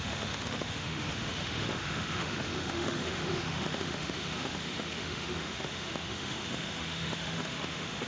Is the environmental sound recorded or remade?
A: remade